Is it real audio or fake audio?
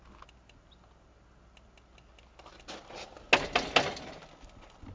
real